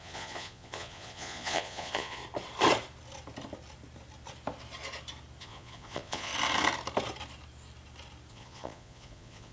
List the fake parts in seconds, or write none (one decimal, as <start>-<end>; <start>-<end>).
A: 0.0-2.2; 5.4-6.3; 8.3-9.5